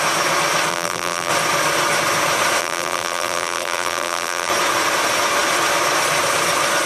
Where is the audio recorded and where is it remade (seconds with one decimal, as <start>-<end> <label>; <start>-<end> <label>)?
0.0-0.7 recorded; 0.7-1.3 remade; 1.3-2.6 recorded; 2.6-4.5 remade; 4.5-6.9 recorded